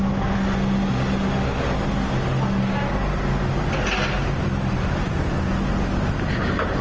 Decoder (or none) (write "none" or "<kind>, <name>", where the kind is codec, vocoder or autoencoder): none